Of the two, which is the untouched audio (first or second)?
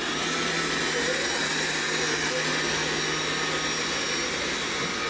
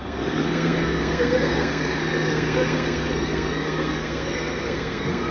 first